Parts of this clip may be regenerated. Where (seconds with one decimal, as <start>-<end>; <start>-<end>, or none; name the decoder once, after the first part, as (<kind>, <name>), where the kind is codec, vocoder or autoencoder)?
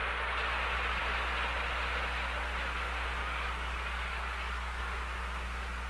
3.2-4.8 (codec, DAC)